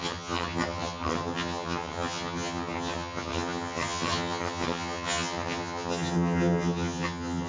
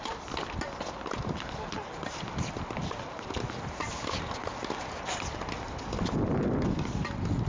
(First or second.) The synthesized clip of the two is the first